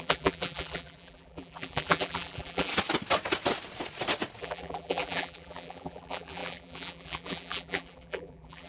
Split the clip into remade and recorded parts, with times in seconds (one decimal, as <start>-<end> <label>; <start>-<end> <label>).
0.0-2.7 remade; 2.7-4.4 recorded; 4.4-8.7 remade